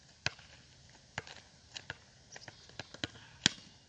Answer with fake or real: real